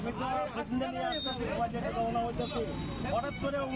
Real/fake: real